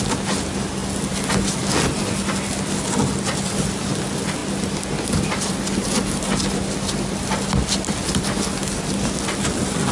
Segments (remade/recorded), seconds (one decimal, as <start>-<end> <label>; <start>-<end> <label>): 0.0-9.9 recorded